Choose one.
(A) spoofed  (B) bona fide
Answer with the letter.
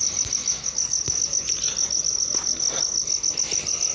B